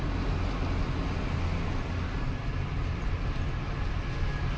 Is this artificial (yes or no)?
no